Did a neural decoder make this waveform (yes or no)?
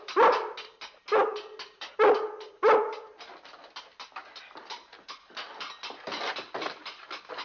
no